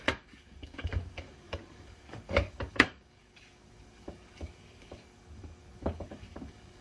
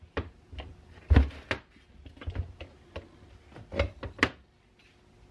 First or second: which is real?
second